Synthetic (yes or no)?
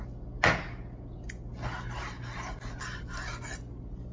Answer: no